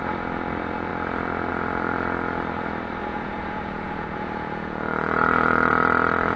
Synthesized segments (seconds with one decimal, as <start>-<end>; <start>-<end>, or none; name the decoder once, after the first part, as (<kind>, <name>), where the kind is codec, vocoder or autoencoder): 3.0-5.7 (vocoder, Vocos)